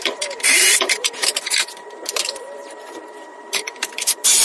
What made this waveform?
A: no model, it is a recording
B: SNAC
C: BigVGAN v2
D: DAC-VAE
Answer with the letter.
C